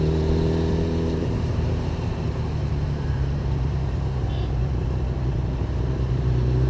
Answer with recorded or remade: remade